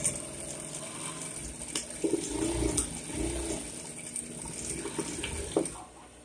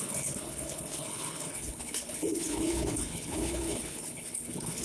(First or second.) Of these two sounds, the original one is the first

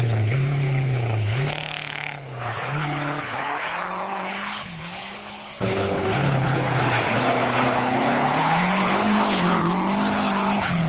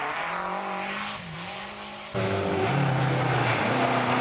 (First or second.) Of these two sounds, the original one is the second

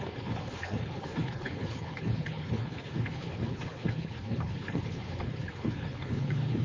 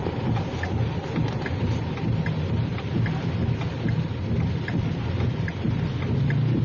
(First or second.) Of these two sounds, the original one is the second